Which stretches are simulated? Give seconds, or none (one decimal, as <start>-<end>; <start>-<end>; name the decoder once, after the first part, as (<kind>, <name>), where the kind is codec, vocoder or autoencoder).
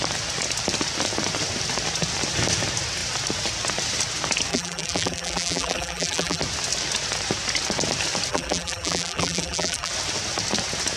4.5-6.4 (vocoder, BigVGAN v2); 8.3-9.9